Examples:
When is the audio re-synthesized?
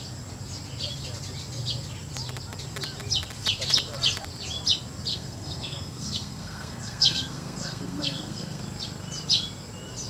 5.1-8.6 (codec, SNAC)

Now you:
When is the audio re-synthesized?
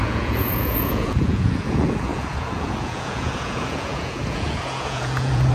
0.0-5.5 (vocoder, Vocos)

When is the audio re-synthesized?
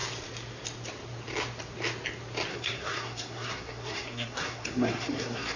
2.5-5.6 (codec, SNAC)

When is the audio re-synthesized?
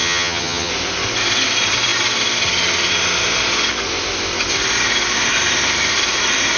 0.0-0.7 (vocoder, HiFi-GAN)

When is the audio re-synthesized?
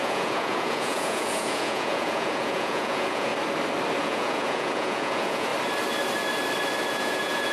0.0-3.3 (vocoder, Vocos); 4.0-5.5; 6.9-7.5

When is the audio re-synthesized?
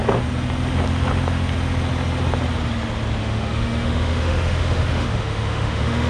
3.2-6.1 (autoencoder, DAC-VAE)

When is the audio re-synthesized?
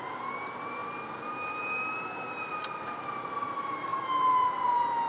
none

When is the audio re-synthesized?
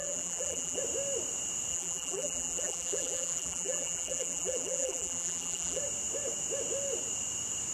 0.0-0.8 (vocoder, BigVGAN v2); 1.7-5.8